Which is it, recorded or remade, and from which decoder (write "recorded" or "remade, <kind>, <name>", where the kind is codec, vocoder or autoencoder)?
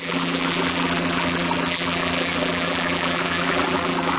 remade, vocoder, BigVGAN v2